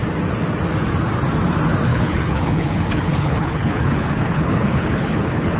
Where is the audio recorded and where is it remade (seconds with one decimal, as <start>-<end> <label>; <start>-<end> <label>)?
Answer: 0.0-1.9 recorded; 1.9-5.6 remade